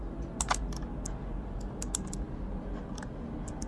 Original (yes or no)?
yes